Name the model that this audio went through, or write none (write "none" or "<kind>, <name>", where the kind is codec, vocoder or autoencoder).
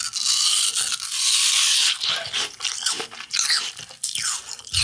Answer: none